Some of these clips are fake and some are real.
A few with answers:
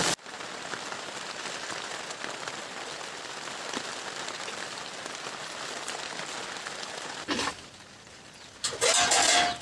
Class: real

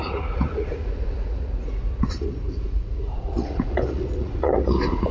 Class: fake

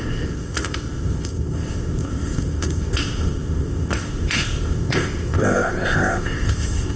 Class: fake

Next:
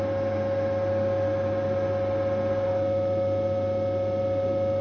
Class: real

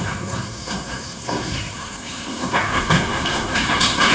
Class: fake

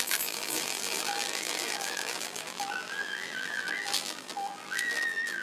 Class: fake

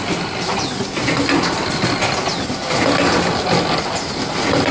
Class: real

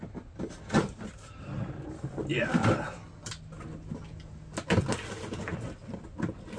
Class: real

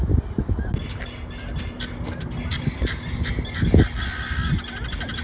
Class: real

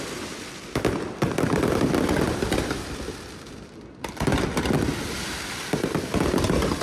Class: fake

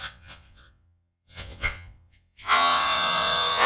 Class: fake